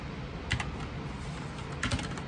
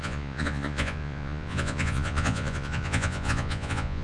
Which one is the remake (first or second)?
second